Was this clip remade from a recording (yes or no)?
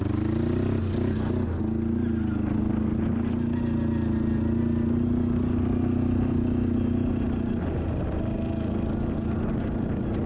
no